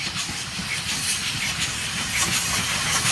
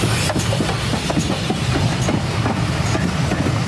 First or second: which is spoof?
first